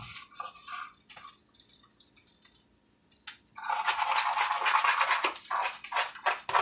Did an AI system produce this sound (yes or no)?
no